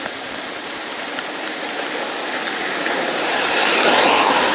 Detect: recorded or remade recorded